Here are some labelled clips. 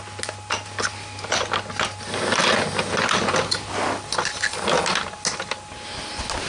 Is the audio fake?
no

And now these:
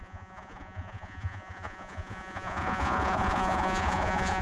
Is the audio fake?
yes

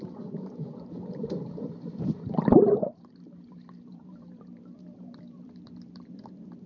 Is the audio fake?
yes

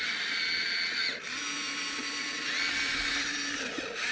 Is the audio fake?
no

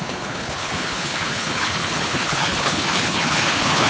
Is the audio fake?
yes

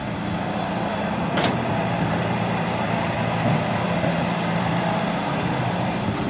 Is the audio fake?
yes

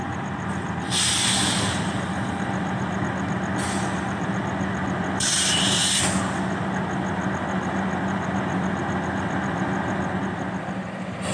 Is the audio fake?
no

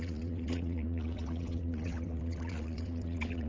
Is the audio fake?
yes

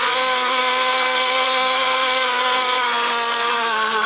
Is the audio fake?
yes